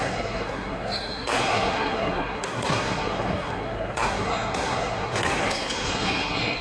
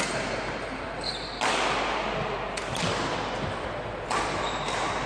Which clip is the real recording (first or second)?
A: second